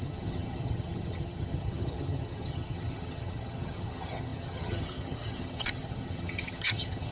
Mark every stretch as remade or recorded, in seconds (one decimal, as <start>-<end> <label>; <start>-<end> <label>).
0.0-7.1 remade